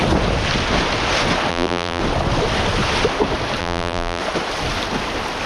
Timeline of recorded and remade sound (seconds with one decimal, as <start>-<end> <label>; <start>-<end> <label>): 0.0-1.5 recorded; 1.5-2.0 remade; 2.0-3.6 recorded; 3.6-4.2 remade; 4.2-5.5 recorded

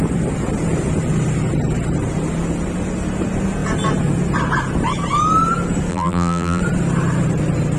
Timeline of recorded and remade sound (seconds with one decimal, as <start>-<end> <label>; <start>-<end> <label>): 0.0-5.9 recorded; 5.9-6.6 remade; 6.6-7.8 recorded